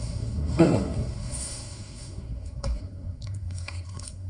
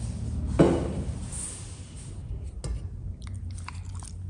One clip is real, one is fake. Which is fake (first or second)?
first